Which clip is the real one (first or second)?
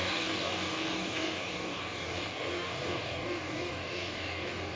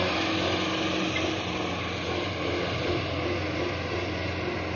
second